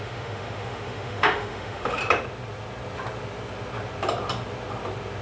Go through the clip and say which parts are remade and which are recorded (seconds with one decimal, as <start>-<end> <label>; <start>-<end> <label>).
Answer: 0.0-2.0 remade; 2.0-5.2 recorded